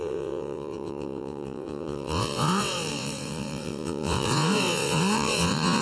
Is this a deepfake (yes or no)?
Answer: yes